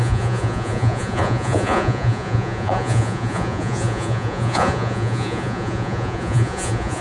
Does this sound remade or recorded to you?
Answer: remade